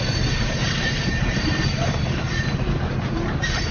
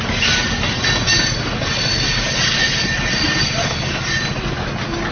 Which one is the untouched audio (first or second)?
second